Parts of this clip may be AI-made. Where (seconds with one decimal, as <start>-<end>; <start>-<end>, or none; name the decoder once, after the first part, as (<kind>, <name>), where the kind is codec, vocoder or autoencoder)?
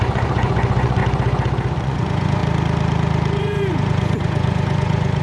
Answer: 0.0-1.0 (vocoder, Vocos); 1.8-2.4; 3.4-5.2